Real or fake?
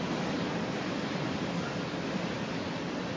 real